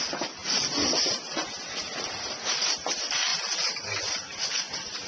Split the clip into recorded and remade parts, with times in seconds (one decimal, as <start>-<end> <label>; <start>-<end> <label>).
0.0-5.1 recorded